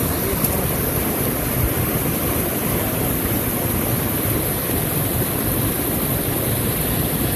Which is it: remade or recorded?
recorded